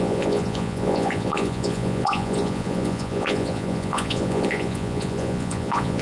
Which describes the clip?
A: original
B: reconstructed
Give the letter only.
B